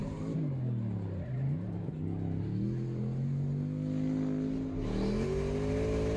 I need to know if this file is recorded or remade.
recorded